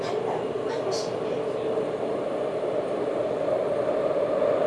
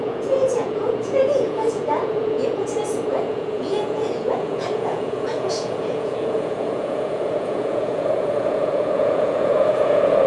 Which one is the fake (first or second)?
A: second